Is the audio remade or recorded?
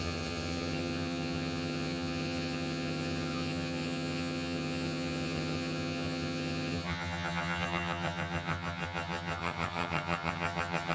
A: remade